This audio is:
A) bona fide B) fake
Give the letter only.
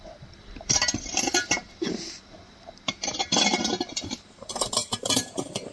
B